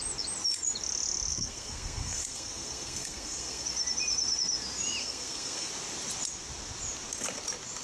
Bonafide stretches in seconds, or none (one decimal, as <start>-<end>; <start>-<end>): 0.0-1.3; 3.6-5.0; 5.7-7.8